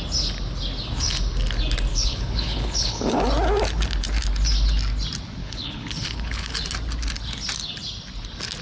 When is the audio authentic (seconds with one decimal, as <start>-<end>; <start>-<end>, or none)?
0.0-1.9; 3.2-5.4; 6.5-8.6